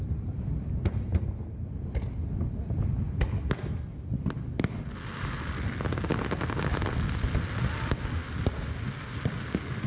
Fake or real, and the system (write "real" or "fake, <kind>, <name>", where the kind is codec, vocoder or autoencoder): real